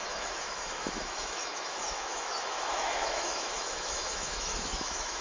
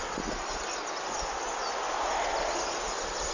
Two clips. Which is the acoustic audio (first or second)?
second